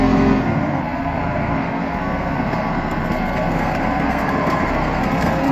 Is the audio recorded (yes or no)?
no